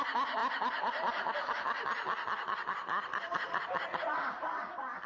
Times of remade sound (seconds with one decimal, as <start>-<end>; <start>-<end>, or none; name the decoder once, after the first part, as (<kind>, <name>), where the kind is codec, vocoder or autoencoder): none